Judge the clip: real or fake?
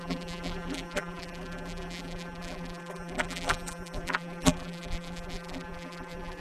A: fake